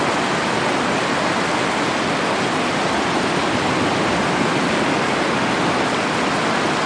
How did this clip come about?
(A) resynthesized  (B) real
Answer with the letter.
B